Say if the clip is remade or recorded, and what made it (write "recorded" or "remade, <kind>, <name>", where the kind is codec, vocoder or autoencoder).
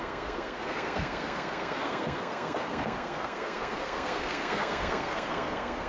remade, codec, SNAC